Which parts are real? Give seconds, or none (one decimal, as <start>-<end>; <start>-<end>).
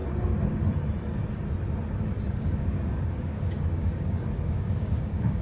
0.0-2.3